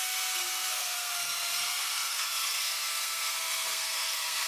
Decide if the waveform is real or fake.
fake